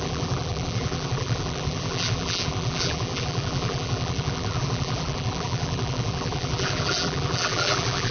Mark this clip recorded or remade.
remade